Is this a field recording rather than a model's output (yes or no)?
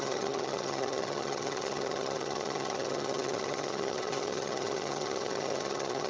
no